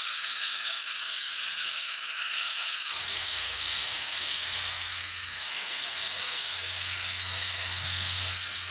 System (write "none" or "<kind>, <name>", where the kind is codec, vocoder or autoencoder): codec, SNAC